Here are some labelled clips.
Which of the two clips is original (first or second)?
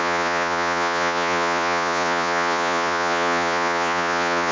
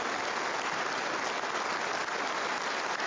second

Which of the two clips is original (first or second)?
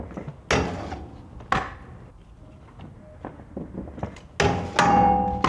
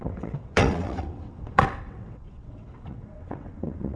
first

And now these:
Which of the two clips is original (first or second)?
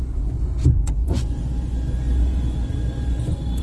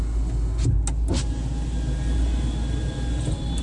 second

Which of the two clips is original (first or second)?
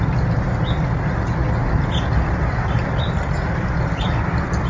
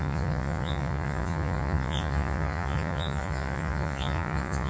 first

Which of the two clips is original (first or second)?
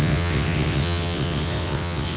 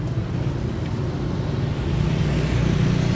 second